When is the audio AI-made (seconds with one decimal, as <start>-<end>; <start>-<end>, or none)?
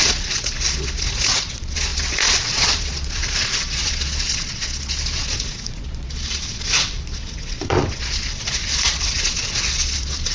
0.0-10.3